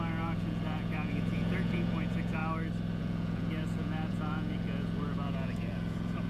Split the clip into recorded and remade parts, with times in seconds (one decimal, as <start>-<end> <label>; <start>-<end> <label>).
0.0-2.4 remade; 2.4-3.0 recorded; 3.0-6.3 remade